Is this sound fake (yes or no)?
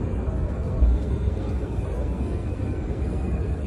yes